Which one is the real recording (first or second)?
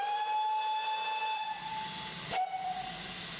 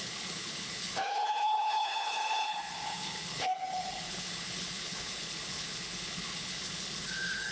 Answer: first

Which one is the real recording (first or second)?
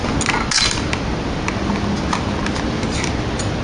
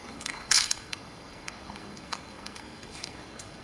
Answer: first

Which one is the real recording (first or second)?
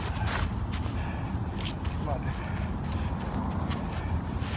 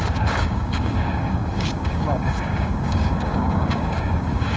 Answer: first